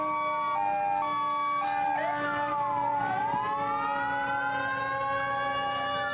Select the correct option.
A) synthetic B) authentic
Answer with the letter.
B